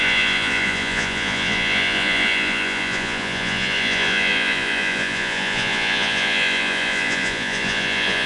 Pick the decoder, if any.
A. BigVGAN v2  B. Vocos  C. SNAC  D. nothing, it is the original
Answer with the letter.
B